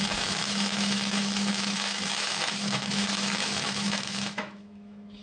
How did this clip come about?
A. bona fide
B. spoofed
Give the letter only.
B